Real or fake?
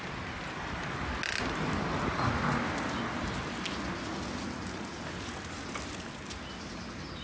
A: real